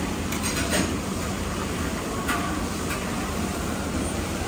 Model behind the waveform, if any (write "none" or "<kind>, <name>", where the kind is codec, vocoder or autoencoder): vocoder, BigVGAN v2